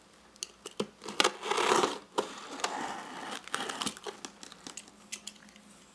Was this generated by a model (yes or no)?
no